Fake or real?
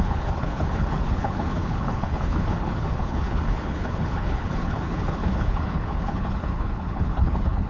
fake